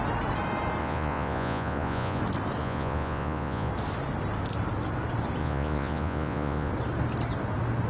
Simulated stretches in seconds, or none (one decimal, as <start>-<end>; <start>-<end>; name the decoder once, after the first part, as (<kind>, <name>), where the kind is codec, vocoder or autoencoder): 0.8-2.2 (vocoder, Vocos); 2.6-3.7; 5.4-6.7